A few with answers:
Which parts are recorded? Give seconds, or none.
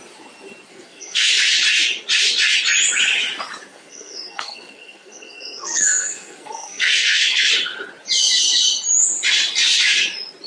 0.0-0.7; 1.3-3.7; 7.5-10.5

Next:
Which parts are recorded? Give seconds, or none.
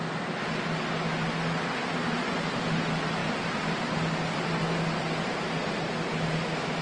0.0-6.8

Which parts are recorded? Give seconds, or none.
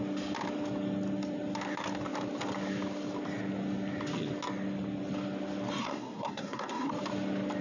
0.0-5.8; 6.9-7.6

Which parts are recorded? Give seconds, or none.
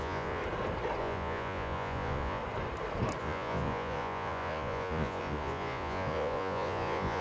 0.4-1.0; 2.4-3.2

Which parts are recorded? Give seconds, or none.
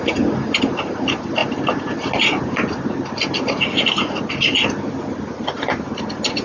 0.0-6.4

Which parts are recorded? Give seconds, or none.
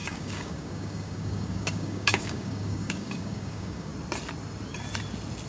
3.9-5.5